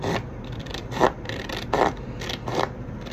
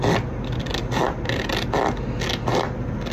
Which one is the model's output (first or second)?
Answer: first